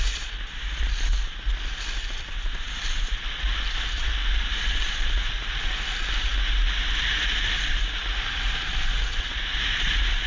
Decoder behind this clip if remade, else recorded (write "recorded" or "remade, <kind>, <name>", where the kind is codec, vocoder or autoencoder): recorded